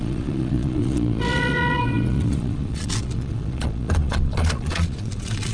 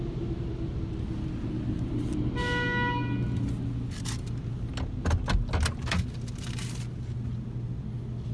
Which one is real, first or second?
second